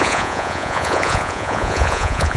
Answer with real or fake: fake